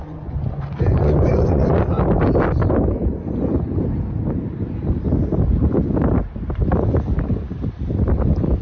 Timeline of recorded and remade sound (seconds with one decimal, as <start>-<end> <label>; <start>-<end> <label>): 0.0-2.0 remade; 2.0-8.6 recorded